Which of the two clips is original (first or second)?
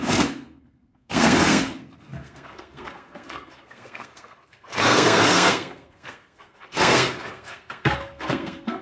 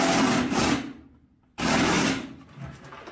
second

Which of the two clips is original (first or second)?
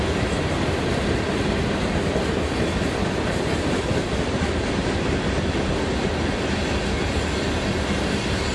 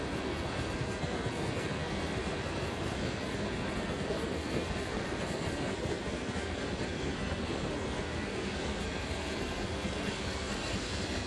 first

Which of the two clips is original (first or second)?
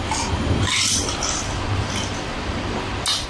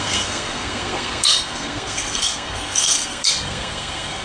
first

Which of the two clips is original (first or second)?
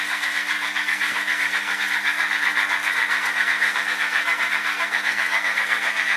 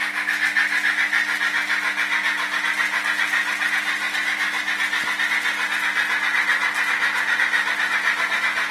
second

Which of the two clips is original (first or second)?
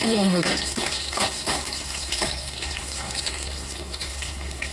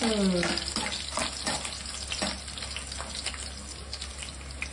second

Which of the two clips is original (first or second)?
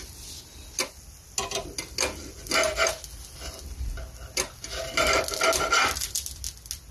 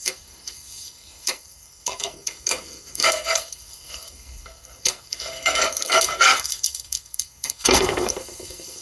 first